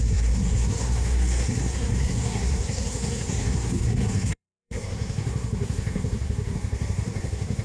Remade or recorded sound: remade